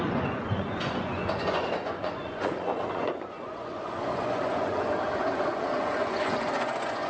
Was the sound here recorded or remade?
remade